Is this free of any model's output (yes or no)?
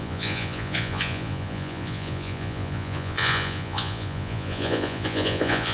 no